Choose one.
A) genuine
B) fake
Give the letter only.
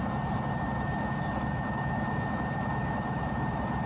A